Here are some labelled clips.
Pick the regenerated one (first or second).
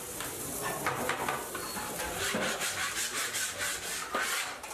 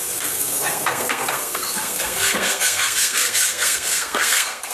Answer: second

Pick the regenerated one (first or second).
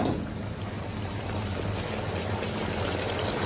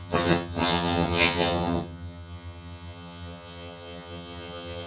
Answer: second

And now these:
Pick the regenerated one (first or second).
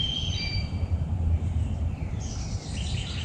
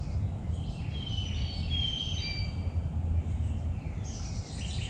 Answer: first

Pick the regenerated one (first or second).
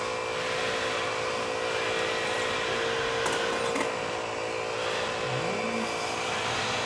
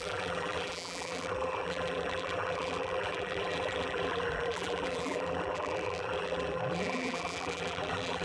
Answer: second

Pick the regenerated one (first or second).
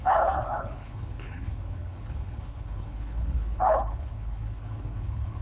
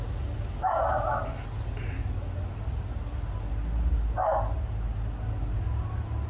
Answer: first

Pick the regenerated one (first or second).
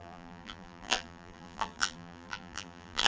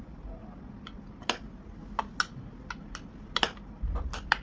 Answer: first